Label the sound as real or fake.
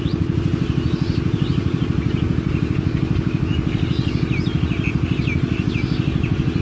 real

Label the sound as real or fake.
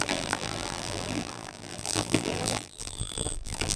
fake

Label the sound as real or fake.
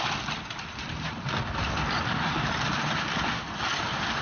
fake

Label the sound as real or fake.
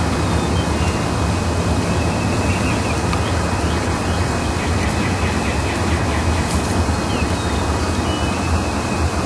real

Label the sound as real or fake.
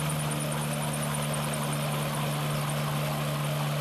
real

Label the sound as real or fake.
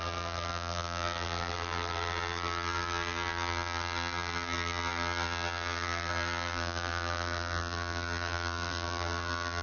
fake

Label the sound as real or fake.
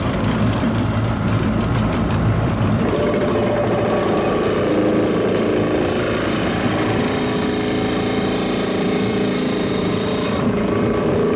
fake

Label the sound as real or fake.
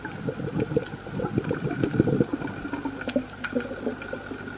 real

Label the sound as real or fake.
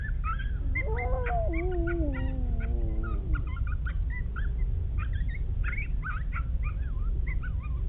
real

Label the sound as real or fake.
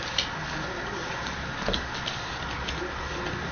real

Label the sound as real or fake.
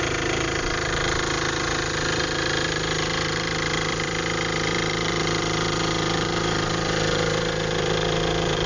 fake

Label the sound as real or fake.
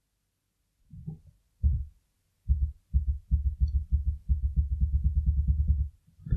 real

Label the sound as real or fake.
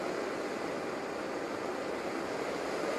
real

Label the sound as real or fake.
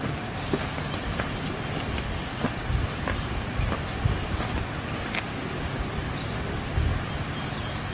real